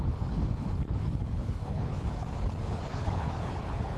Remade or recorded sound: remade